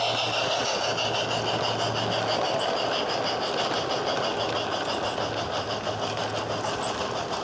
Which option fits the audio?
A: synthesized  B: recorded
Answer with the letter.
B